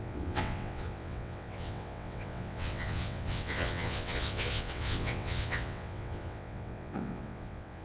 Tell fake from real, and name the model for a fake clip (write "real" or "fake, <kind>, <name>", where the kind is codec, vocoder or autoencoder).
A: fake, vocoder, WaveNeXt